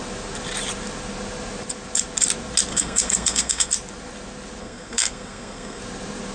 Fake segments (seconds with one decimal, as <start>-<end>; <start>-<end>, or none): 2.7-3.7; 4.6-5.8